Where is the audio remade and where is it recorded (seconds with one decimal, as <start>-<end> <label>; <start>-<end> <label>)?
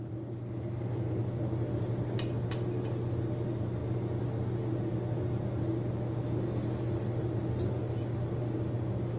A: 0.0-9.2 recorded